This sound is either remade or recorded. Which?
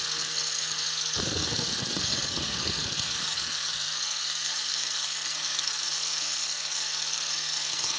remade